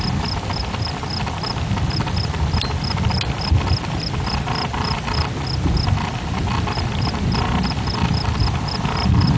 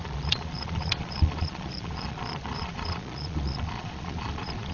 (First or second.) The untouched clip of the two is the first